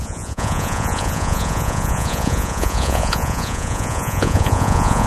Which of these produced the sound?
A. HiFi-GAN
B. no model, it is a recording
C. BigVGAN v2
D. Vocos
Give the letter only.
D